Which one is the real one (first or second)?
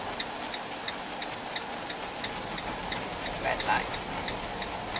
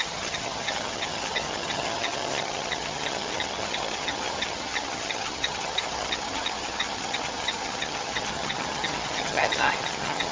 first